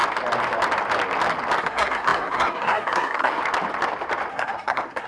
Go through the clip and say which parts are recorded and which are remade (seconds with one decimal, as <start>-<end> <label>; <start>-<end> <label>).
0.0-1.6 recorded; 1.6-3.4 remade; 3.4-4.3 recorded; 4.3-5.1 remade